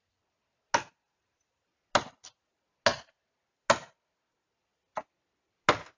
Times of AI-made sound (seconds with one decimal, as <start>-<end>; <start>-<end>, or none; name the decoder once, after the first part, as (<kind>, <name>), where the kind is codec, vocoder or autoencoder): none